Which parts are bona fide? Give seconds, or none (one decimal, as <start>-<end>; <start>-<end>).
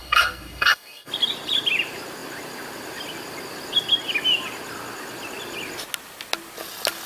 1.1-7.1